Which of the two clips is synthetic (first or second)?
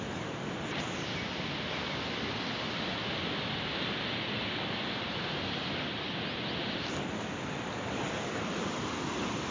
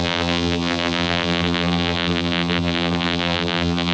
second